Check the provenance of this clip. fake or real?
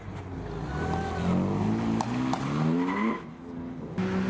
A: real